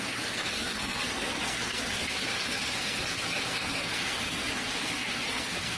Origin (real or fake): fake